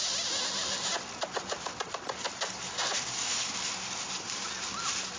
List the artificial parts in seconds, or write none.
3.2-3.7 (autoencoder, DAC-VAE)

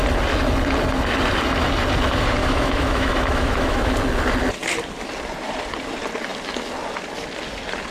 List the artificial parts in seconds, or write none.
2.4-3.9 (autoencoder, DAC-VAE)

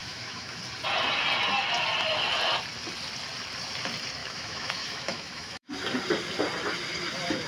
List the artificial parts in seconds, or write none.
0.0-0.6 (autoencoder, DAC-VAE); 4.2-5.7

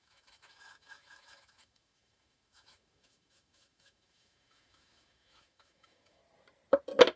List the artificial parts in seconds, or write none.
0.0-6.2 (autoencoder, DAC-VAE)

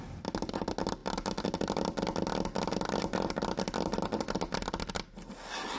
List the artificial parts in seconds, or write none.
none

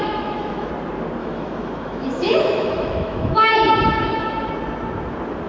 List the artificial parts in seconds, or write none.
0.0-0.7 (autoencoder, DAC-VAE); 1.2-4.5